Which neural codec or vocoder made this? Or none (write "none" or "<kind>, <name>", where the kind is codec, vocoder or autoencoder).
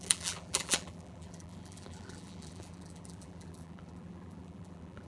vocoder, BigVGAN v2